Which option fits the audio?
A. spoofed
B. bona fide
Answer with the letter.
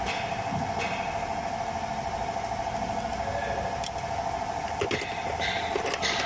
B